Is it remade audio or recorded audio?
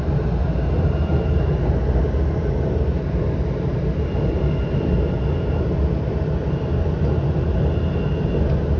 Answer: recorded